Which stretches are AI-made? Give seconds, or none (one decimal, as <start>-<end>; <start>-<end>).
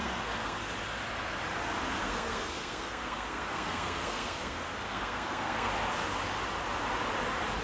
0.0-0.6; 2.0-5.7